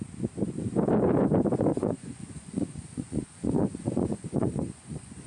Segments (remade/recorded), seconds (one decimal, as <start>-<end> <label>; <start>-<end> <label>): 0.0-1.7 recorded; 1.7-5.3 remade